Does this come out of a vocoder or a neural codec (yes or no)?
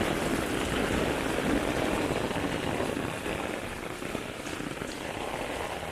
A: yes